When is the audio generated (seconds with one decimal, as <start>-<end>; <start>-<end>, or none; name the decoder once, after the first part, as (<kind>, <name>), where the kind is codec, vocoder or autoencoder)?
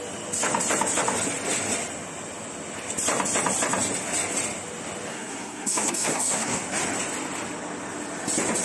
5.1-6.6 (codec, SNAC)